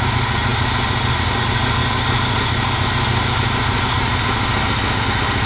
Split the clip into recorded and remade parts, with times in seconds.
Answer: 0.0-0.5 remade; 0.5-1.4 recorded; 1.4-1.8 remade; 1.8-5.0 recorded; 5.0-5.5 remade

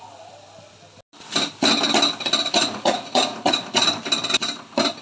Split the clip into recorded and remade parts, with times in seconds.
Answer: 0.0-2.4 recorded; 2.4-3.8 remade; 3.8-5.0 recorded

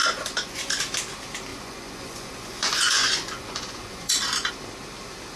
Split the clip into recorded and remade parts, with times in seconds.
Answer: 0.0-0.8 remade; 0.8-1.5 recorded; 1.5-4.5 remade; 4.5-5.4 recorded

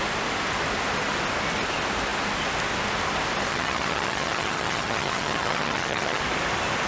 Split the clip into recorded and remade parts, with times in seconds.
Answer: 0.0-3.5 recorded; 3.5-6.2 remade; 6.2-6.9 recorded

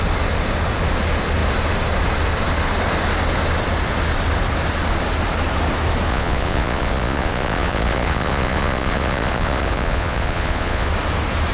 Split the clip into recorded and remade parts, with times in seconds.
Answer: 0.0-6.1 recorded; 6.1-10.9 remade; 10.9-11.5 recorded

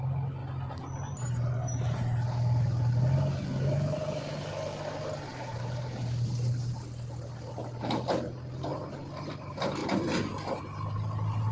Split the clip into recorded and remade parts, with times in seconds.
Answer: 0.0-11.5 recorded

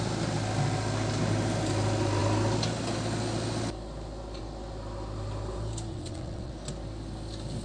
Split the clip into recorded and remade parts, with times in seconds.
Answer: 0.0-5.9 recorded; 5.9-6.5 remade; 6.5-7.6 recorded

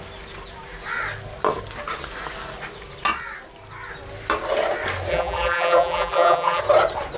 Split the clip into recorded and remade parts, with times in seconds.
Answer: 0.0-5.1 recorded; 5.1-6.6 remade; 6.6-7.2 recorded